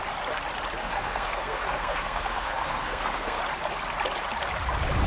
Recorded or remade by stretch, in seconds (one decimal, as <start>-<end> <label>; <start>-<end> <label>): 0.0-0.8 recorded; 0.8-3.4 remade; 3.4-5.1 recorded